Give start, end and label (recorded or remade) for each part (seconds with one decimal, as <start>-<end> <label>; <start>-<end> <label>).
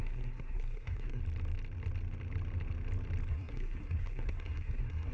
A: 0.0-1.2 remade; 1.2-3.3 recorded; 3.3-5.1 remade